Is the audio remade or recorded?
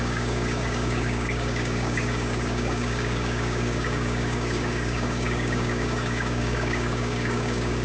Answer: remade